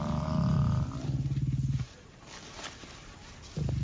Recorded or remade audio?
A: recorded